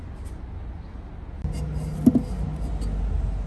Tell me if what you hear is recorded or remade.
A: recorded